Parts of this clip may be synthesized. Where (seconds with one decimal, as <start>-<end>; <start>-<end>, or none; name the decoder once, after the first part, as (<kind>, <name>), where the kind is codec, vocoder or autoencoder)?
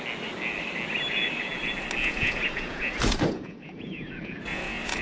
2.0-5.0 (vocoder, Vocos)